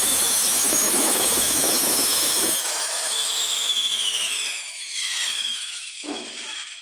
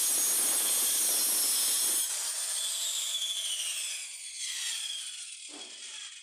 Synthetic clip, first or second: first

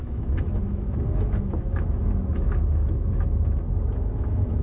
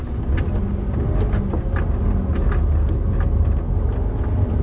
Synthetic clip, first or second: first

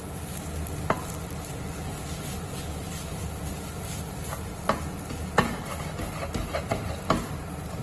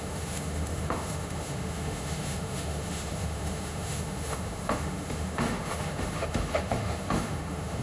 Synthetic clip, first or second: second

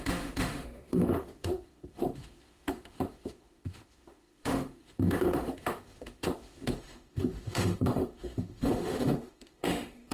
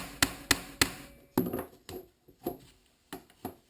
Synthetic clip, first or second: first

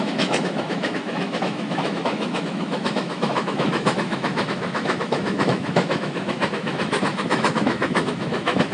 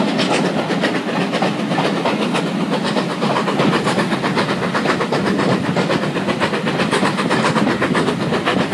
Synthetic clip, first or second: first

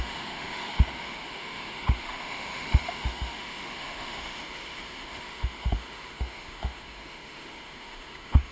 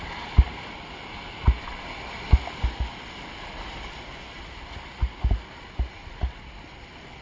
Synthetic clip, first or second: first